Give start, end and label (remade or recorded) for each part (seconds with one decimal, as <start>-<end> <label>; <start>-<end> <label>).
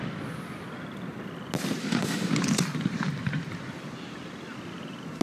0.0-1.8 recorded; 1.8-2.3 remade; 2.3-5.2 recorded